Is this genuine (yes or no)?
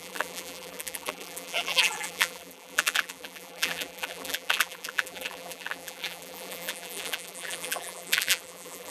no